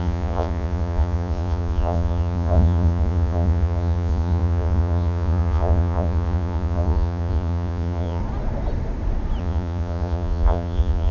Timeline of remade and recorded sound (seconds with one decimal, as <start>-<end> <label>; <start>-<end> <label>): 0.0-8.2 remade; 8.2-9.4 recorded; 9.4-11.1 remade